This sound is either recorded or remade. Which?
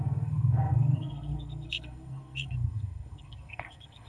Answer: remade